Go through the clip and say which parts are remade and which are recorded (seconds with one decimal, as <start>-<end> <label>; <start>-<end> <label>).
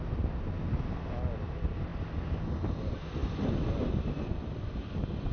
0.0-3.2 recorded; 3.2-5.3 remade